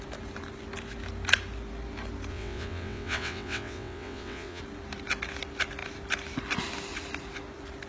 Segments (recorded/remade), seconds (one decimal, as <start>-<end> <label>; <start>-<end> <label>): 0.0-2.3 recorded; 2.3-4.6 remade; 4.6-7.9 recorded